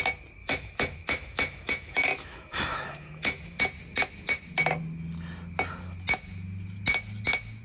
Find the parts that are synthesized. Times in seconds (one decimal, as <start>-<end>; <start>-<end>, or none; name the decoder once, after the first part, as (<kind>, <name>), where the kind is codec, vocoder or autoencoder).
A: 0.4-3.6 (autoencoder, DAC-VAE)